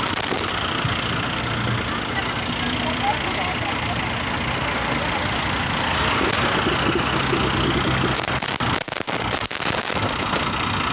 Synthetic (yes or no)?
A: no